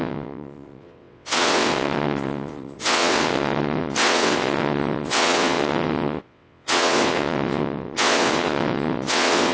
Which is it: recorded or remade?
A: remade